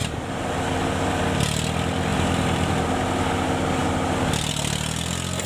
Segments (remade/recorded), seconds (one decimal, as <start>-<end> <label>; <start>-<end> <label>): 0.0-0.7 remade; 0.7-2.1 recorded; 2.1-2.9 remade; 2.9-5.5 recorded